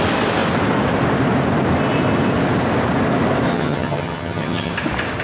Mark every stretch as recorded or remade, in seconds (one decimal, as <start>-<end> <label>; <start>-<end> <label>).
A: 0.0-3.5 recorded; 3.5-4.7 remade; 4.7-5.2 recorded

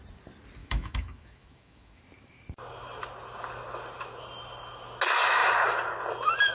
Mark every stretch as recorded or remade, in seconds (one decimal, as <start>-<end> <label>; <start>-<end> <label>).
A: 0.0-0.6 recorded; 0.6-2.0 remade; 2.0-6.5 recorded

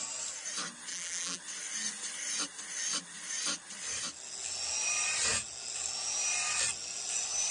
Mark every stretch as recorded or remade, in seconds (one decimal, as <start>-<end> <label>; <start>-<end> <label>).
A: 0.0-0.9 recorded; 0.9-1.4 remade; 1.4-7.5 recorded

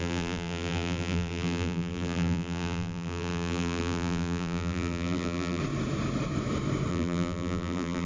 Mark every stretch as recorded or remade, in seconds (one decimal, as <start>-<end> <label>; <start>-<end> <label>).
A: 0.0-5.6 remade; 5.6-6.9 recorded; 6.9-8.1 remade

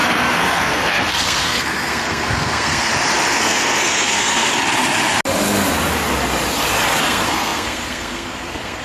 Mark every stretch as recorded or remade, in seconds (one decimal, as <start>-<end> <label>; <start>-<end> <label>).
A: 0.0-2.9 remade; 2.9-3.4 recorded; 3.4-4.5 remade; 4.5-7.0 recorded; 7.0-8.8 remade

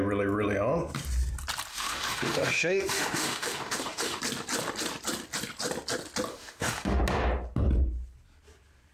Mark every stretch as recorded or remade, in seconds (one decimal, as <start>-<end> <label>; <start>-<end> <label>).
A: 0.0-1.7 recorded; 1.7-4.2 remade; 4.2-6.3 recorded; 6.3-7.0 remade; 7.0-8.9 recorded